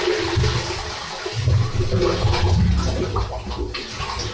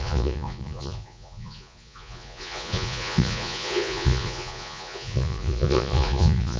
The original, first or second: first